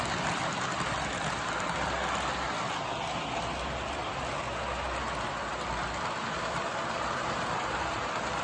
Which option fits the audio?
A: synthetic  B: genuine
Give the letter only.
B